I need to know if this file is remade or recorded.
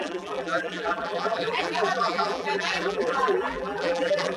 remade